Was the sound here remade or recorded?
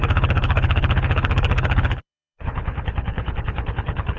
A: remade